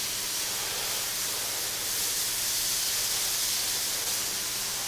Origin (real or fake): real